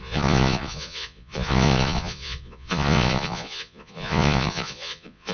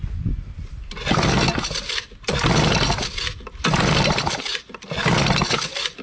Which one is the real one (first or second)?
second